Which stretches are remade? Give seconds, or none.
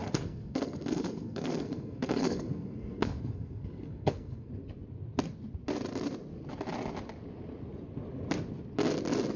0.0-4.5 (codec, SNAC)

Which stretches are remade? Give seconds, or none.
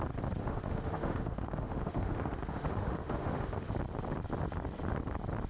0.4-3.7 (autoencoder, DAC-VAE)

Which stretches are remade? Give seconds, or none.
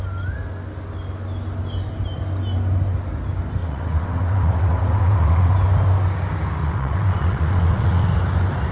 3.6-5.5 (vocoder, WaveNeXt); 6.6-8.1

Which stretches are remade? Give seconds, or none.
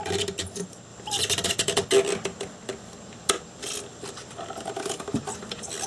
0.9-1.5 (vocoder, BigVGAN v2); 2.7-3.6